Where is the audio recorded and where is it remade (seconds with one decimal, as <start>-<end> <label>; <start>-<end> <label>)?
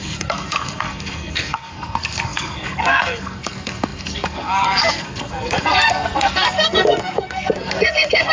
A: 0.0-8.3 remade